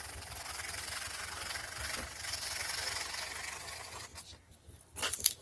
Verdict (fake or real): real